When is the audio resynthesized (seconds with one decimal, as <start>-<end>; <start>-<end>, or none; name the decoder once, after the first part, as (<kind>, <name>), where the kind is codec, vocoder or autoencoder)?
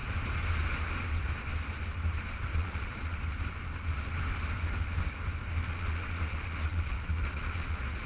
2.5-3.2 (vocoder, Vocos); 5.6-8.1